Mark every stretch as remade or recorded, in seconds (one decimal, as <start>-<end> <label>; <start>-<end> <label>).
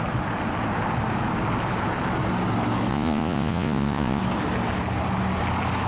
0.0-2.9 recorded; 2.9-4.2 remade; 4.2-5.9 recorded